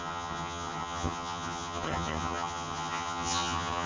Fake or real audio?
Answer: fake